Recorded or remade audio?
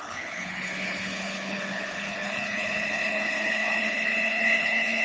remade